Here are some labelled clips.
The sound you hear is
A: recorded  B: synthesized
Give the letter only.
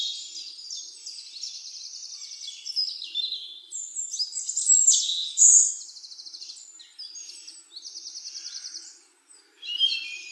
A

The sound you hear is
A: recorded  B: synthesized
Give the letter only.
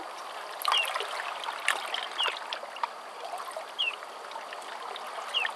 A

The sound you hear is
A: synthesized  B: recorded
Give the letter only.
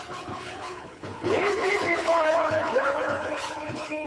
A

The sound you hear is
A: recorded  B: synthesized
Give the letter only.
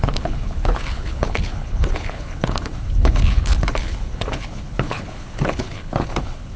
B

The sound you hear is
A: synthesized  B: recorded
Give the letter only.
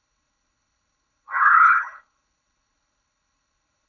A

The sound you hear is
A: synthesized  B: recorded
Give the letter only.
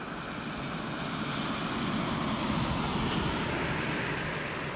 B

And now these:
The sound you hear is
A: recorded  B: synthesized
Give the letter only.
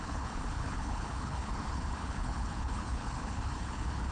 B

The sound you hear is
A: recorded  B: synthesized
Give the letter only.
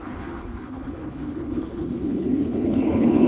B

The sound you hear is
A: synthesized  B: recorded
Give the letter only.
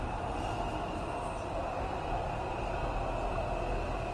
B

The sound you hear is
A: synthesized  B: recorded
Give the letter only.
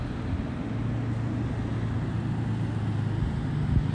B